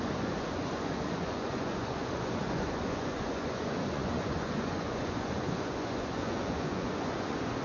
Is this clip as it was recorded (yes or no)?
no